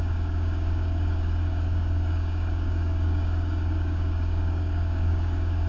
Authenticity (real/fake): fake